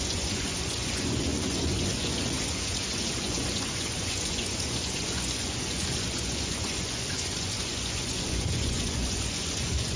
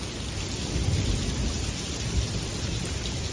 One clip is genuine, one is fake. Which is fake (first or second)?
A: first